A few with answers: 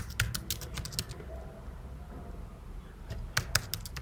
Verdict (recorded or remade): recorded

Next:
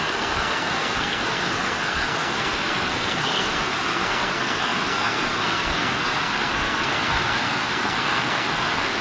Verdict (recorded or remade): remade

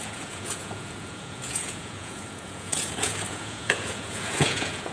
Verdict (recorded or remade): remade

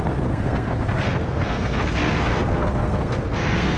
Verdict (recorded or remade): remade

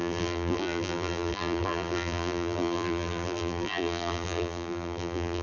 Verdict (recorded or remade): remade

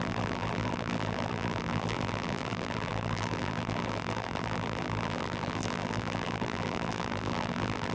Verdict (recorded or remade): remade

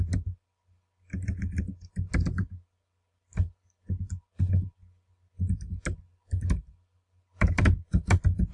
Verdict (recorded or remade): recorded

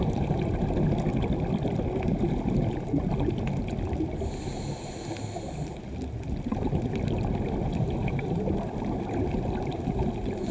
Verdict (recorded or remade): recorded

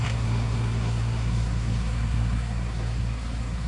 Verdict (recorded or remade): remade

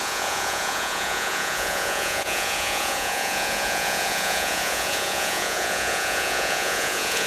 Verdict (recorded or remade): remade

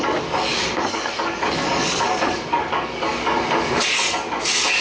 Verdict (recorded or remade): remade